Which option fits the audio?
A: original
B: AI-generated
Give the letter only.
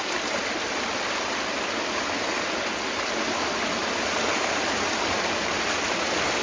A